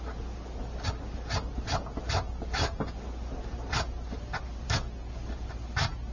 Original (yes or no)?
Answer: yes